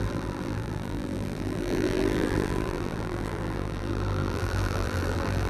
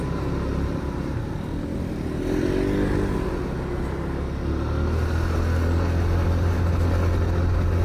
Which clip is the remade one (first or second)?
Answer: first